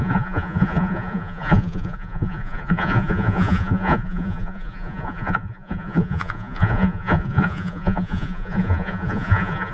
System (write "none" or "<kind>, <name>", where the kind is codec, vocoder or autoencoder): vocoder, Vocos